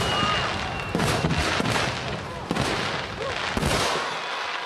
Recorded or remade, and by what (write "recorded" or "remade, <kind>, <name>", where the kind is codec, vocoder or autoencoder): recorded